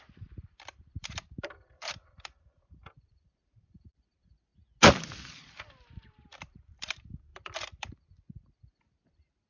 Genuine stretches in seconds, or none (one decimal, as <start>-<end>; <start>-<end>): 4.5-5.5; 7.3-9.5